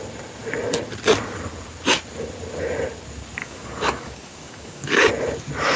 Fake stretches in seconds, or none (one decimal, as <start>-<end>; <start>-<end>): 3.4-5.1